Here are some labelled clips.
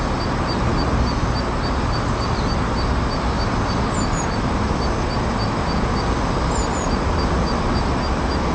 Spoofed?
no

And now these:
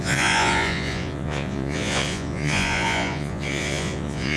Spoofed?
yes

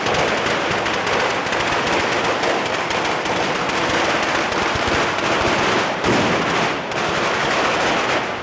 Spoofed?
no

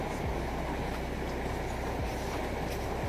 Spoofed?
no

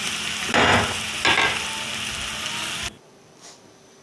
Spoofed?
no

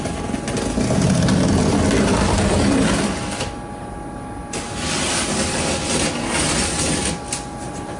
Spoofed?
no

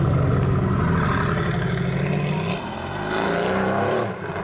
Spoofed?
no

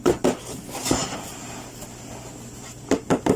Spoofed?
no